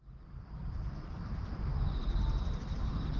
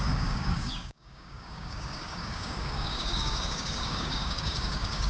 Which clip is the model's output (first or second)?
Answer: second